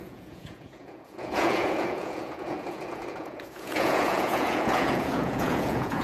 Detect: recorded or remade remade